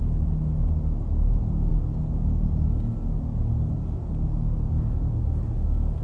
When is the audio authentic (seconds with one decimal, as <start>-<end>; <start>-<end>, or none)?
0.0-6.0